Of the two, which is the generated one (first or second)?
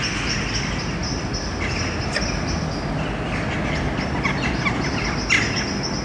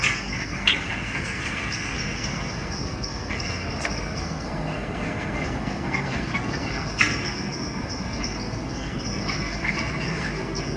second